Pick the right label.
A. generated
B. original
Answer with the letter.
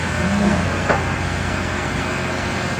A